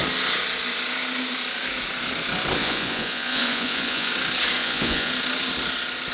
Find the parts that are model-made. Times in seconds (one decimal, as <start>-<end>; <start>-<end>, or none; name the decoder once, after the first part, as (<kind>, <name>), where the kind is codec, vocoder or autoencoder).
2.6-4.1 (vocoder, Vocos); 4.6-5.1